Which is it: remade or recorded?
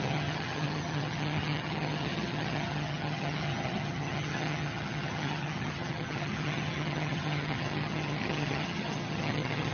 remade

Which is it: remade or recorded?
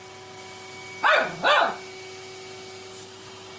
recorded